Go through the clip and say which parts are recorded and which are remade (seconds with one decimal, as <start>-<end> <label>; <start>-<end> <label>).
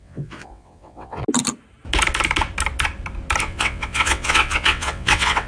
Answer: 0.0-1.2 remade; 1.2-3.4 recorded; 3.4-5.5 remade